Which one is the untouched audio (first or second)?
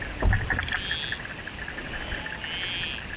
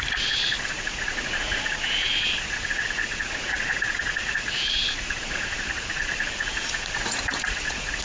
first